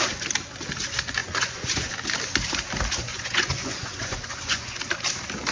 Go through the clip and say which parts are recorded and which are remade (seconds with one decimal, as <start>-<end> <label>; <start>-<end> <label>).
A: 0.0-1.2 recorded; 1.2-1.9 remade; 1.9-3.1 recorded; 3.1-4.8 remade; 4.8-5.5 recorded